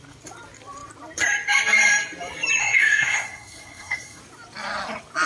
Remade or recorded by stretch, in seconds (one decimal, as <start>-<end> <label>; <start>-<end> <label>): 0.0-2.6 recorded; 2.6-4.2 remade; 4.2-5.3 recorded